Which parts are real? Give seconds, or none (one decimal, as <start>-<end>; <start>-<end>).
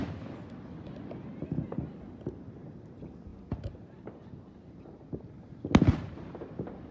0.0-6.9